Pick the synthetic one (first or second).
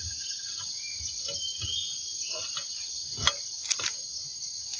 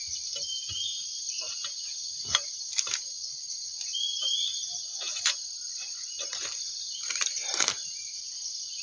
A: second